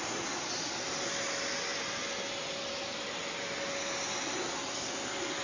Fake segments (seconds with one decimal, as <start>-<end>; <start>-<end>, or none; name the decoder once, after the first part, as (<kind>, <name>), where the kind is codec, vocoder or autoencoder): none